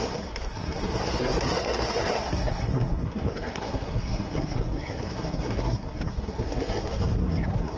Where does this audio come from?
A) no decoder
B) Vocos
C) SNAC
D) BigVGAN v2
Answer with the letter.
C